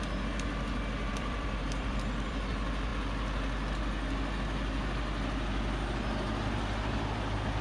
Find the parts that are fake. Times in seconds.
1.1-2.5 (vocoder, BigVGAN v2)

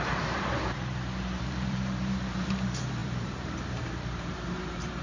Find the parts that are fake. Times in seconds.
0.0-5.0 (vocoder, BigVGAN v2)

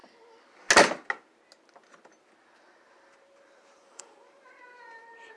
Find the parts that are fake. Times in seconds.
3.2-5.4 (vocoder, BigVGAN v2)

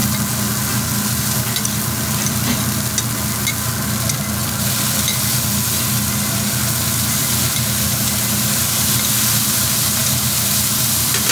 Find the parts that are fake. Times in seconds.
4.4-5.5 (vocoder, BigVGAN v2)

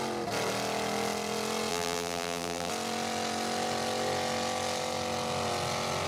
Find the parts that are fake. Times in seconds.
1.7-2.7 (vocoder, BigVGAN v2)